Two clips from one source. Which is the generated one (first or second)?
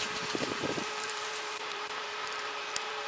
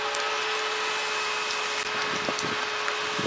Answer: first